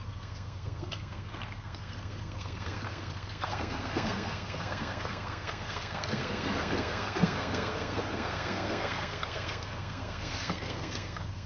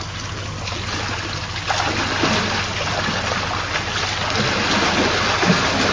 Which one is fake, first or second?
first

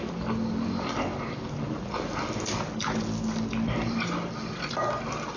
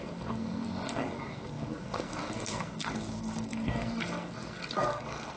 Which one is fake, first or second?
second